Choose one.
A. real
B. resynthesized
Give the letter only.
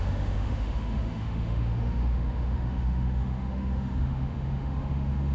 B